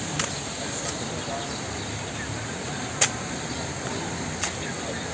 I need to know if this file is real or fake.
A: real